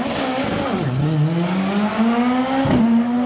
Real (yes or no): yes